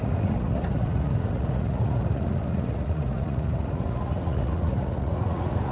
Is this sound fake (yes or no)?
yes